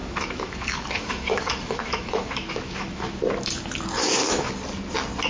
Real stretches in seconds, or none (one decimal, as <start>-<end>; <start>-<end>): 3.2-4.0; 4.5-5.3